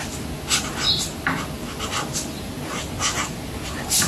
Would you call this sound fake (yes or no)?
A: no